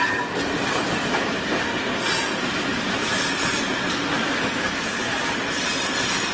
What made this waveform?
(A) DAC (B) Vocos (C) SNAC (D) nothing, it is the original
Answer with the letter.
D